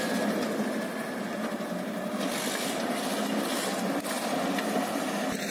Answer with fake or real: real